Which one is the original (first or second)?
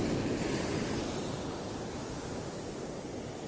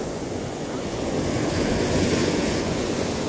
first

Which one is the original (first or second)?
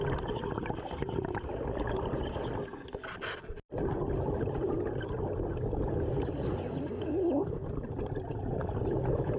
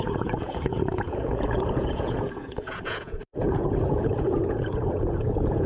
first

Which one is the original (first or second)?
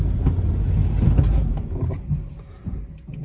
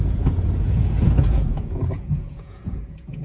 first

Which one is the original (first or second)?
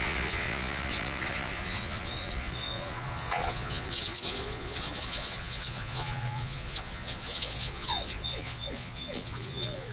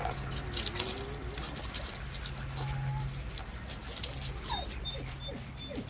second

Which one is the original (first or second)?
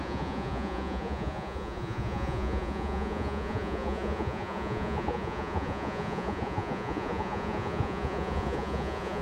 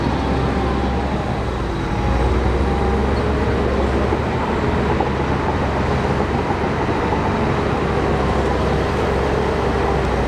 second